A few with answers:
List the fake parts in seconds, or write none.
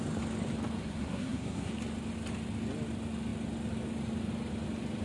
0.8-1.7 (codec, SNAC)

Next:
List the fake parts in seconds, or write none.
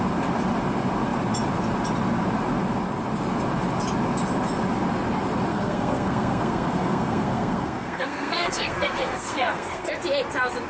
5.5-9.9 (codec, SNAC)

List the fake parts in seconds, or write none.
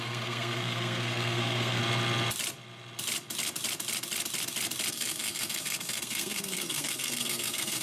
0.0-1.8 (codec, SNAC); 4.9-7.8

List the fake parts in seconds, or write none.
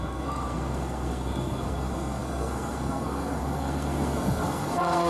0.0-5.1 (codec, SNAC)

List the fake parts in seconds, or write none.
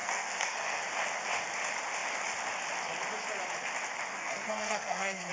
0.0-0.8 (codec, SNAC); 4.1-5.3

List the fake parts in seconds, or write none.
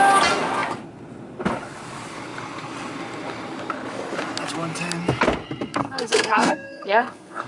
5.8-7.5 (codec, SNAC)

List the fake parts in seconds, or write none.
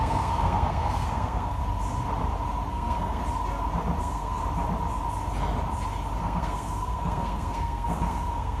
0.0-1.6 (codec, SNAC); 2.7-3.2; 4.0-4.4; 6.2-8.6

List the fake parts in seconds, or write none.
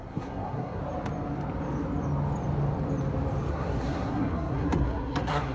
0.0-0.8 (codec, SNAC); 3.5-5.5